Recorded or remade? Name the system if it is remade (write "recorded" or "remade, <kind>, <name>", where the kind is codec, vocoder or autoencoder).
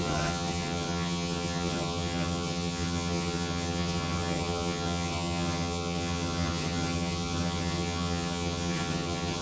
remade, vocoder, HiFi-GAN